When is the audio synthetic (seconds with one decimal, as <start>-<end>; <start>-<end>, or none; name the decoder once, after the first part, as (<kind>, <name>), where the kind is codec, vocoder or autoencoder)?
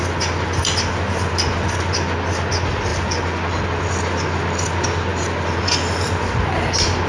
none